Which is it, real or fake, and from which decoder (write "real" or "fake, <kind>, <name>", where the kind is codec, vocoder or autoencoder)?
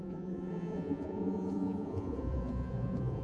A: fake, vocoder, Vocos